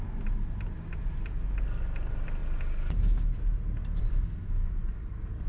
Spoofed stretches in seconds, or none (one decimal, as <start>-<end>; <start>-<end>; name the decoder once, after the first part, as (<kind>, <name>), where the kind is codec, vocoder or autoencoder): none